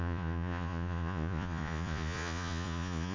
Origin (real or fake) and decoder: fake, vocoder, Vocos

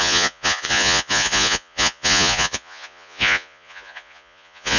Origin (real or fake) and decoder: fake, vocoder, Vocos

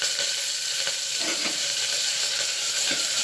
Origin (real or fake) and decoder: fake, vocoder, BigVGAN v2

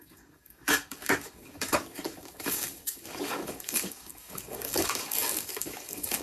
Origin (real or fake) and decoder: fake, codec, DAC